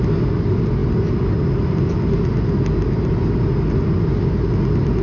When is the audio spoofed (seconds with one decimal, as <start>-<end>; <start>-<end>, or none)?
none